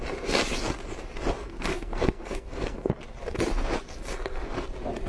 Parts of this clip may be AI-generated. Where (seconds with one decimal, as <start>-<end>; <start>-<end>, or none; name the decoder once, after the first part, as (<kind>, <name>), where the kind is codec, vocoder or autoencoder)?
1.4-2.9 (codec, SNAC)